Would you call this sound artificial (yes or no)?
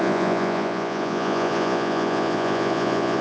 yes